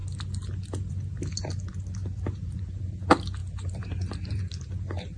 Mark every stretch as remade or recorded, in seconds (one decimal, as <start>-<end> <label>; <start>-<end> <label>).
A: 0.0-2.0 recorded; 2.0-2.7 remade; 2.7-3.4 recorded; 3.4-4.4 remade; 4.4-5.2 recorded